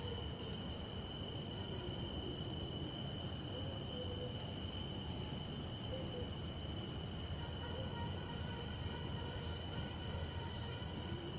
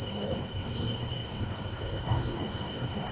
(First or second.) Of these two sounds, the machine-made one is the second